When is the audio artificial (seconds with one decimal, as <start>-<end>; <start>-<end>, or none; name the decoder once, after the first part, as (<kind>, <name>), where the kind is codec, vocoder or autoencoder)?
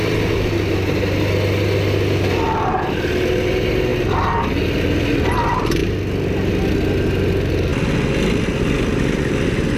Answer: none